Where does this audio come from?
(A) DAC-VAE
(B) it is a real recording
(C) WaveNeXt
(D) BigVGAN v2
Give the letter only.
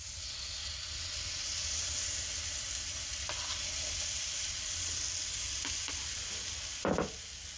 B